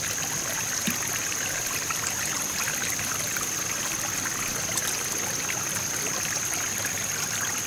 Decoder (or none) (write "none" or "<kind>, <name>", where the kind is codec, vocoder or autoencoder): none